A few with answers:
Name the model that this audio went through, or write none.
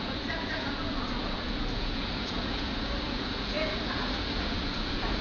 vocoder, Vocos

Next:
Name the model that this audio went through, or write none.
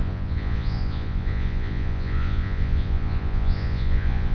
vocoder, Vocos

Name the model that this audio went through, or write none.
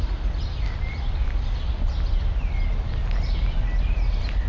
none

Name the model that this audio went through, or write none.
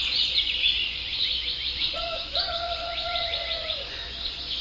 vocoder, Vocos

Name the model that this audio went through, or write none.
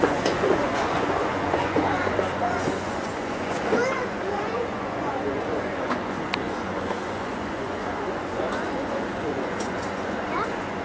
vocoder, Vocos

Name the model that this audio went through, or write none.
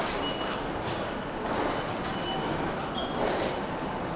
none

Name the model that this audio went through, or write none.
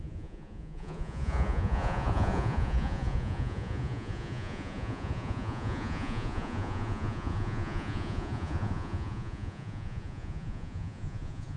vocoder, Vocos